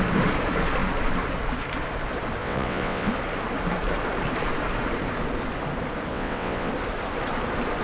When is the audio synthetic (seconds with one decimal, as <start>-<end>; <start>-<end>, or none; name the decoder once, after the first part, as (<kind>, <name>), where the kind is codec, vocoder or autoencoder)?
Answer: 2.4-3.1 (vocoder, WaveNeXt); 6.1-6.7